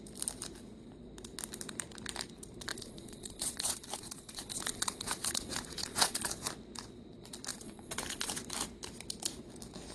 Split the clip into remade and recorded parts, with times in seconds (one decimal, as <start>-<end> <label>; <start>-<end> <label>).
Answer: 0.0-2.7 recorded; 2.7-6.5 remade; 6.5-7.5 recorded; 7.5-8.4 remade; 8.4-9.9 recorded